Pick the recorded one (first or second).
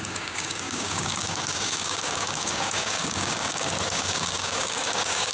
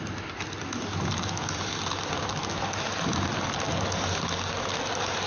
second